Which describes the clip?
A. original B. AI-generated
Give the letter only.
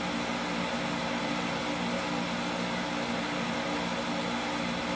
A